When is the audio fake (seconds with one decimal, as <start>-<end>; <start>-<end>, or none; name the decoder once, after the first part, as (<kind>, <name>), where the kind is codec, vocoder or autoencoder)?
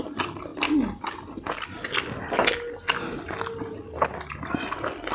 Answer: none